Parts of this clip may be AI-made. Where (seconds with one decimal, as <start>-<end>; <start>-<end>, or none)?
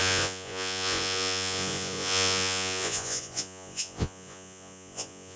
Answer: 0.0-5.4